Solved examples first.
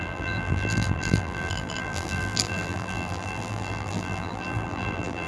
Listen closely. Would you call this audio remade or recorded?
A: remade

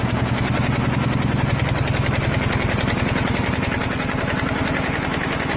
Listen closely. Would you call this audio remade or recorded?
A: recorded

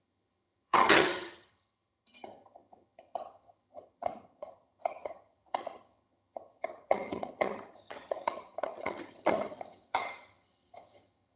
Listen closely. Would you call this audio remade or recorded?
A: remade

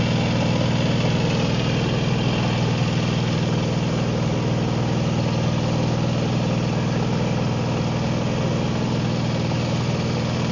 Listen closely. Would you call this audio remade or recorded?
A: recorded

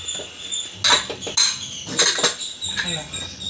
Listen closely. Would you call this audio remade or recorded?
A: recorded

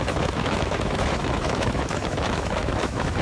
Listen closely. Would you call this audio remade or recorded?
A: remade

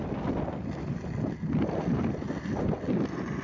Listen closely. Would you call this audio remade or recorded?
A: recorded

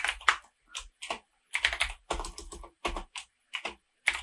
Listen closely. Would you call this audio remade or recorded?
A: recorded